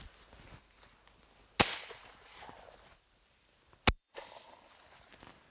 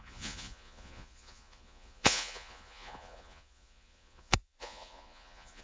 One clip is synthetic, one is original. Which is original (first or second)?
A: first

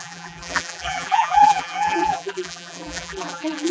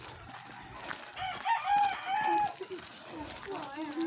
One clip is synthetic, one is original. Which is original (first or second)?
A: second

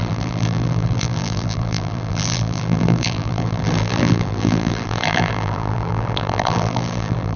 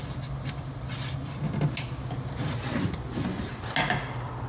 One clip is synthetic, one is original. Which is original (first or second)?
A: second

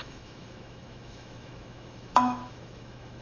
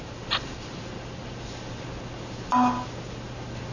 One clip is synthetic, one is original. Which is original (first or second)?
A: second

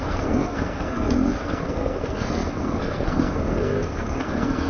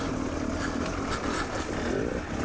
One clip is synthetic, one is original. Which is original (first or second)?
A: second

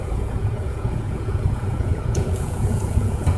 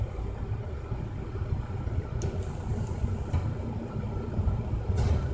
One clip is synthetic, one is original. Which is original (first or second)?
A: second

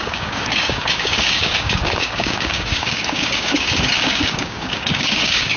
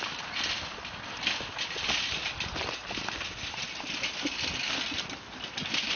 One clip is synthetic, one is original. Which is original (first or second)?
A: second